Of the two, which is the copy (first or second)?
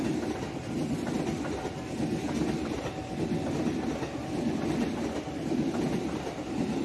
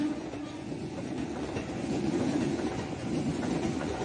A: second